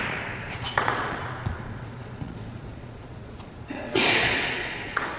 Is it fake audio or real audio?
fake